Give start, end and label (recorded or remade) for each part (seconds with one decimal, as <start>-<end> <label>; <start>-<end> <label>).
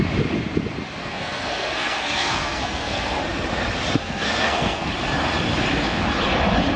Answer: 0.0-1.0 recorded; 1.0-3.2 remade; 3.2-4.0 recorded; 4.0-4.9 remade; 4.9-6.8 recorded